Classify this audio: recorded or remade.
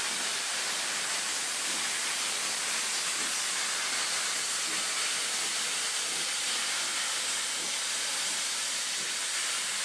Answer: recorded